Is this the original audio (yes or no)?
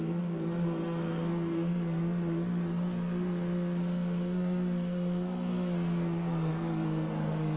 no